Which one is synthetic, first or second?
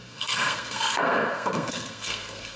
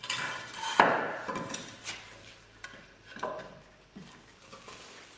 first